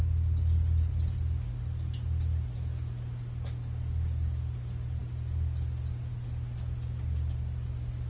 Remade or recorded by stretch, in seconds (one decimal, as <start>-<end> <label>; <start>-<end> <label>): 0.0-8.1 recorded